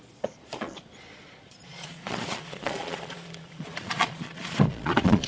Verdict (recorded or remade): remade